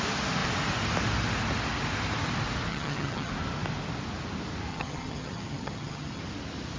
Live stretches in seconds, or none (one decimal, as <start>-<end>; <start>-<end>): 0.0-2.7; 3.3-4.7; 6.2-6.8